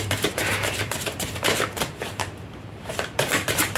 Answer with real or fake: fake